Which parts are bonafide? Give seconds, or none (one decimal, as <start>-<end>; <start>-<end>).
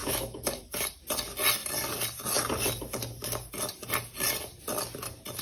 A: 0.6-5.4